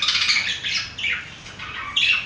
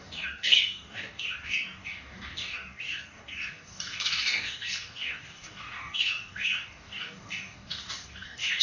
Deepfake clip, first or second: second